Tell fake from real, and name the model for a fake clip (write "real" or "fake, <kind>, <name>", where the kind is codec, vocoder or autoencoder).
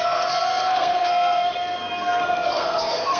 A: fake, codec, SNAC